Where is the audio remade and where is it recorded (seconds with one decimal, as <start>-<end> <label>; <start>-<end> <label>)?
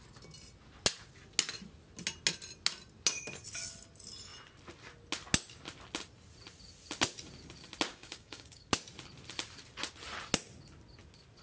0.0-7.9 recorded; 7.9-8.7 remade; 8.7-11.4 recorded